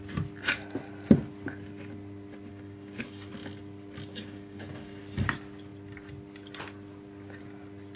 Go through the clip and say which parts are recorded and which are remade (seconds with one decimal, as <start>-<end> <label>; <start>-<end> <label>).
0.0-2.5 recorded; 2.5-3.3 remade; 3.3-4.1 recorded; 4.1-5.0 remade; 5.0-8.0 recorded